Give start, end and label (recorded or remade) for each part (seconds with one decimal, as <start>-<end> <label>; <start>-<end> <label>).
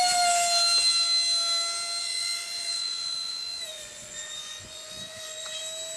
0.0-2.0 recorded; 2.0-5.6 remade; 5.6-6.0 recorded